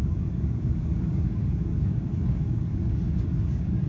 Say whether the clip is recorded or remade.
remade